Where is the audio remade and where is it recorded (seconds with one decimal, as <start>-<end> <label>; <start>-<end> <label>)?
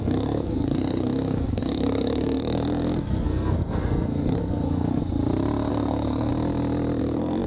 0.0-5.0 remade; 5.0-5.7 recorded; 5.7-6.3 remade; 6.3-7.0 recorded; 7.0-7.5 remade